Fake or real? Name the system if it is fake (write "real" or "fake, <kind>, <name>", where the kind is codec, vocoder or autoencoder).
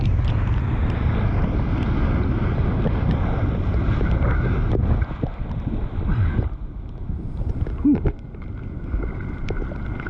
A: real